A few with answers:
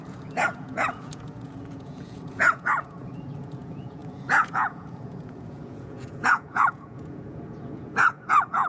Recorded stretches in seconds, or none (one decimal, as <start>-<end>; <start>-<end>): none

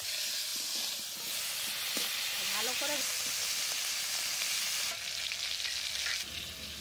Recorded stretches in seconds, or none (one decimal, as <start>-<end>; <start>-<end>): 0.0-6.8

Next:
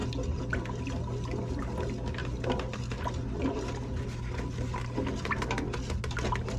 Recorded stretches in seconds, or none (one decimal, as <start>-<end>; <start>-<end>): 0.0-6.6

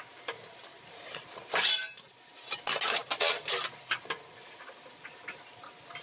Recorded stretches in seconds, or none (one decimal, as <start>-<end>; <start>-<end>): 0.0-6.0

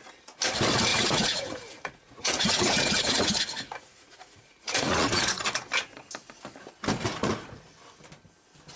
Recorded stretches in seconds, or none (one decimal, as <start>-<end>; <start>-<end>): 0.0-0.9; 5.4-7.2; 7.7-8.8

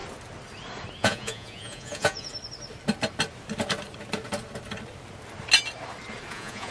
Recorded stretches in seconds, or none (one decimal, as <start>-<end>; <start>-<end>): 0.0-1.0; 2.3-6.3

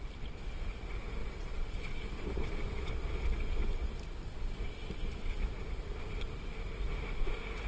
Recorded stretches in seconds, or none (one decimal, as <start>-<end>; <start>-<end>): 0.0-1.2; 2.9-7.7